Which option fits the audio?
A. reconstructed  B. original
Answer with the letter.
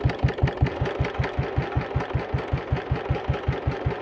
B